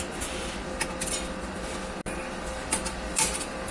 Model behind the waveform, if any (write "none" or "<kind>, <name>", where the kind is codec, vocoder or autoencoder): none